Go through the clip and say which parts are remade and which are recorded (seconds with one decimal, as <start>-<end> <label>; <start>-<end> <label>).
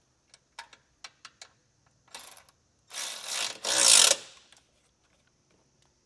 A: 0.0-6.1 recorded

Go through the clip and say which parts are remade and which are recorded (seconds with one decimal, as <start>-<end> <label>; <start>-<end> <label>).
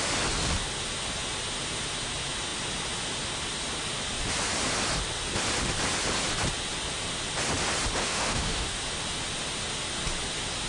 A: 0.0-8.0 recorded; 8.0-8.8 remade; 8.8-10.7 recorded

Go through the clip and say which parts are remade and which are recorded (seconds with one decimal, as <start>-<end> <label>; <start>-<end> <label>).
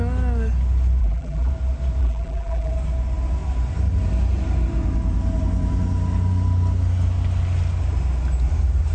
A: 0.0-1.0 recorded; 1.0-1.5 remade; 1.5-2.0 recorded; 2.0-2.7 remade; 2.7-8.9 recorded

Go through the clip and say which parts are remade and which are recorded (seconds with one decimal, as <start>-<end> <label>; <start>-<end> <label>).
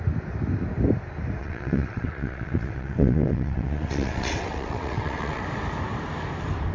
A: 0.0-1.4 recorded; 1.4-5.4 remade; 5.4-6.7 recorded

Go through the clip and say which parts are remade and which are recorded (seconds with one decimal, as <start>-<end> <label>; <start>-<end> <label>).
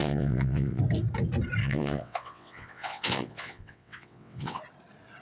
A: 0.0-0.8 remade; 0.8-1.6 recorded; 1.6-4.6 remade; 4.6-5.2 recorded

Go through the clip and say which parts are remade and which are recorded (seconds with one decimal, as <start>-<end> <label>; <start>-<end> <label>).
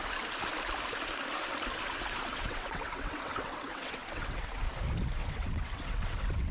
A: 0.0-2.3 recorded; 2.3-4.6 remade; 4.6-5.2 recorded; 5.2-6.5 remade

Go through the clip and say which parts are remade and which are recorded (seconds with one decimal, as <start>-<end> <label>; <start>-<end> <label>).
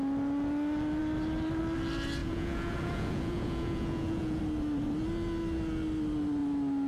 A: 0.0-2.2 recorded; 2.2-4.4 remade; 4.4-6.9 recorded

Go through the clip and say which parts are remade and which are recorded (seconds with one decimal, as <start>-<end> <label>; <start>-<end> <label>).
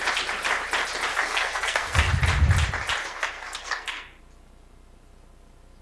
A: 0.0-1.1 recorded; 1.1-2.1 remade; 2.1-3.0 recorded; 3.0-4.2 remade; 4.2-5.8 recorded